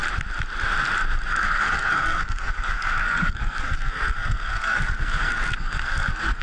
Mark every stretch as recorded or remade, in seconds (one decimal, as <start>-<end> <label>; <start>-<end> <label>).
0.0-1.3 recorded; 1.3-6.4 remade